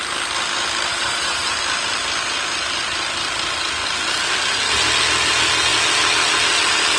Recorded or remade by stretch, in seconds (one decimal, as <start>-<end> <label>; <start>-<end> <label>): 0.0-0.9 recorded; 0.9-1.5 remade; 1.5-7.0 recorded